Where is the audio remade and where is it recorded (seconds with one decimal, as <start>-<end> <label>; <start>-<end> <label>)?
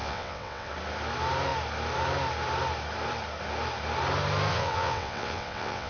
0.0-0.7 remade; 0.7-4.5 recorded; 4.5-5.9 remade